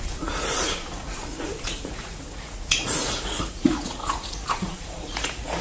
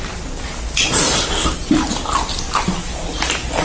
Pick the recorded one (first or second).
second